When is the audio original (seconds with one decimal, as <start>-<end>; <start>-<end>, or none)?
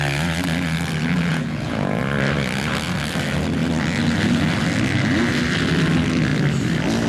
0.0-1.3; 2.0-7.1